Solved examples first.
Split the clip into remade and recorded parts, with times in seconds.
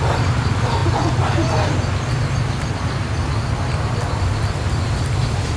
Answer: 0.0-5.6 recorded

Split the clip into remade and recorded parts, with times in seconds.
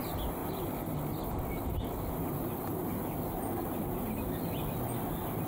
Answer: 0.0-5.5 recorded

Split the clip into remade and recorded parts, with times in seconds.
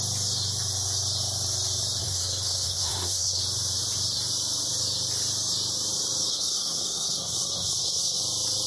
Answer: 0.0-2.0 recorded; 2.0-3.4 remade; 3.4-6.3 recorded; 6.3-8.2 remade; 8.2-8.7 recorded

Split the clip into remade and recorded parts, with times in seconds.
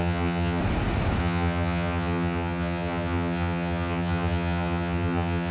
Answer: 0.0-0.6 remade; 0.6-1.2 recorded; 1.2-5.5 remade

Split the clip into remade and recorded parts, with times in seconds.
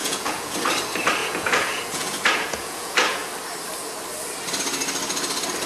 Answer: 0.0-0.5 remade; 0.5-1.2 recorded; 1.2-3.3 remade; 3.3-5.7 recorded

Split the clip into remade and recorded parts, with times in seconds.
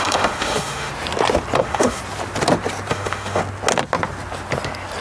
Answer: 0.0-0.9 remade; 0.9-1.6 recorded; 1.6-2.0 remade; 2.0-2.9 recorded; 2.9-3.4 remade; 3.4-5.0 recorded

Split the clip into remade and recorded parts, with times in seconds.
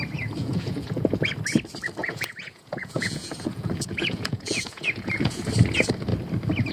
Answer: 0.0-0.4 recorded; 0.4-1.2 remade; 1.2-2.0 recorded; 2.0-5.5 remade; 5.5-6.7 recorded